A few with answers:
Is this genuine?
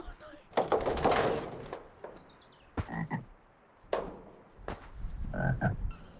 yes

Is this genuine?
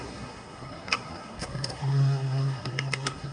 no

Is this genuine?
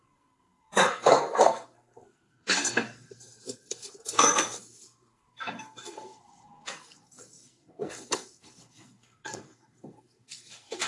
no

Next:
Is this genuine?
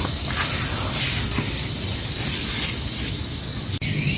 yes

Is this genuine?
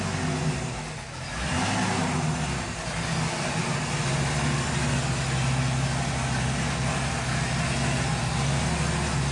yes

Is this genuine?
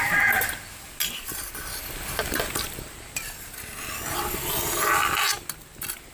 yes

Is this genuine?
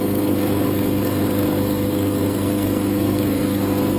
no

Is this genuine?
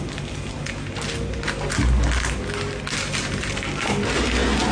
yes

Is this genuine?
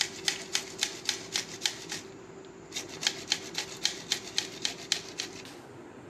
yes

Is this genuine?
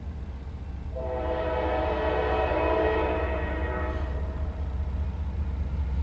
yes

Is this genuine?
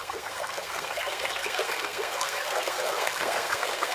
no